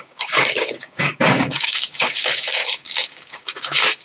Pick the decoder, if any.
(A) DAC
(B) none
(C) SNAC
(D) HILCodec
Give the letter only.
A